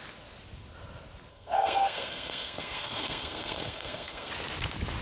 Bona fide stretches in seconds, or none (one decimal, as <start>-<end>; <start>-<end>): 0.0-1.3; 4.3-5.0